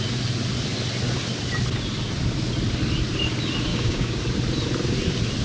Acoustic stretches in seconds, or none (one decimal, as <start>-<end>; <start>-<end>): 0.0-3.7; 4.2-5.4